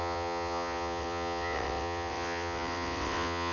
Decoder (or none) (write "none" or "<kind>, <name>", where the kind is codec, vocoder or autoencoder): vocoder, WaveNeXt